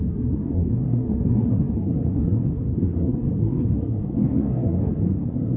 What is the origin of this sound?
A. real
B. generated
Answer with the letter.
B